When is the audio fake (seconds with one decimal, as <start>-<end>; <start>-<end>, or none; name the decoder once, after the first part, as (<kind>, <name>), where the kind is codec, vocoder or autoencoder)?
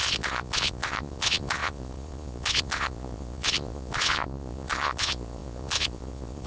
0.0-6.5 (vocoder, Vocos)